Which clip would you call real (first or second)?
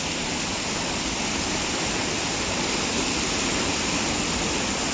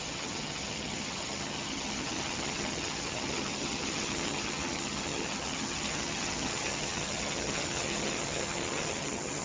first